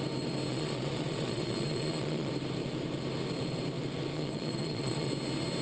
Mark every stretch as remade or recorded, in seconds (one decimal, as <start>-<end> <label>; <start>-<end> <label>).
0.0-0.5 recorded; 0.5-2.3 remade; 2.3-4.1 recorded; 4.1-5.1 remade; 5.1-5.6 recorded